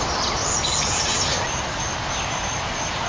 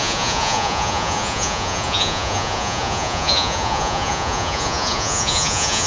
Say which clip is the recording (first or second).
first